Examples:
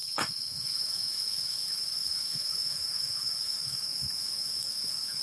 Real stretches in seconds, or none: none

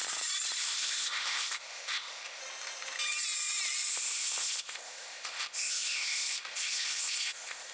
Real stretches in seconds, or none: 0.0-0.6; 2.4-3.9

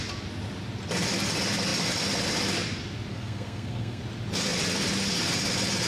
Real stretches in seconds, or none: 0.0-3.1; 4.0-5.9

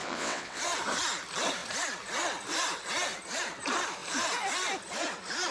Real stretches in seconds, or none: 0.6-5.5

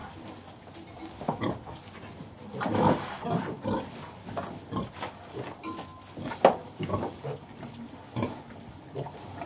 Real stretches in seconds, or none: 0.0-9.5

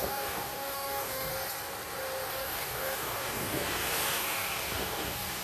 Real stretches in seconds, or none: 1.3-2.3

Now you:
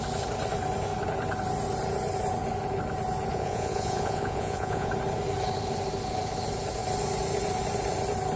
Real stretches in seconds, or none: 0.0-3.3; 4.9-8.4

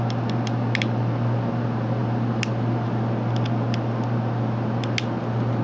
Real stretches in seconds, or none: 0.0-5.6